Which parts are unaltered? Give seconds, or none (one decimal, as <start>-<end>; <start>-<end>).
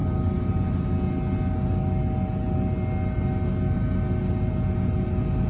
0.0-5.5